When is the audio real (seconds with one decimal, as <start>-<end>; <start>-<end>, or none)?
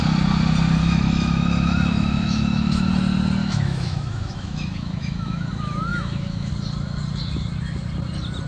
0.0-0.8; 2.9-3.4; 5.5-5.9; 6.5-8.5